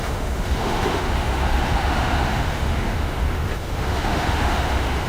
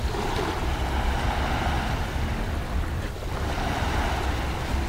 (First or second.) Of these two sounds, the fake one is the first